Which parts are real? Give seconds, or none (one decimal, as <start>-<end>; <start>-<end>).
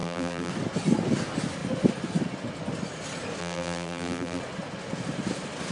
0.5-3.4; 4.4-5.7